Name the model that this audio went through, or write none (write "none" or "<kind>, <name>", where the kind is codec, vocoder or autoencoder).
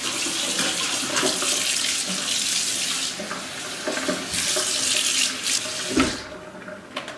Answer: none